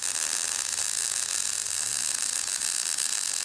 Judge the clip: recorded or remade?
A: recorded